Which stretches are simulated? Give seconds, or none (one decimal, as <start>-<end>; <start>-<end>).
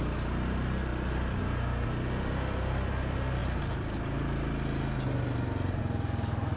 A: none